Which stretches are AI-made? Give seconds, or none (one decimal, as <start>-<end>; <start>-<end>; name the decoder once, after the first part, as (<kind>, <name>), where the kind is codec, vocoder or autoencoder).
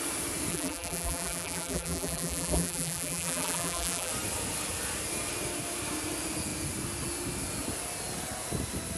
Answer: 0.5-4.1 (vocoder, BigVGAN v2)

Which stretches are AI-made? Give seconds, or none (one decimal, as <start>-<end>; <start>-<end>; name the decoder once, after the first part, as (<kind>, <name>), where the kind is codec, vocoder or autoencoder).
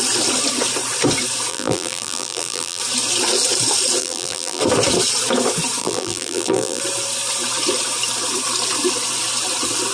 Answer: 1.5-2.8 (vocoder, BigVGAN v2); 4.0-4.6; 5.8-6.8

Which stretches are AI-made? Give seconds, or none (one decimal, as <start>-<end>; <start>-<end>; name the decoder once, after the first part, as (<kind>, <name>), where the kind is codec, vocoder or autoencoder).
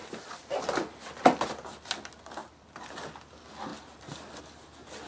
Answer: 0.0-1.9 (vocoder, BigVGAN v2); 2.4-2.9; 3.7-4.4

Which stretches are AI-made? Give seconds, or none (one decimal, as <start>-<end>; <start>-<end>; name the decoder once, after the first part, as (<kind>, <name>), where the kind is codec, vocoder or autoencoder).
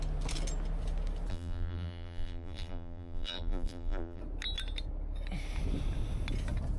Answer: 1.3-4.2 (vocoder, BigVGAN v2)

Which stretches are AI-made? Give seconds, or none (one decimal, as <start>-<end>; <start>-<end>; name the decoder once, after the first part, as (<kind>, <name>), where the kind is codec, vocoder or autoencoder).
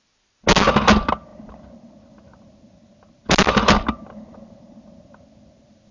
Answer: none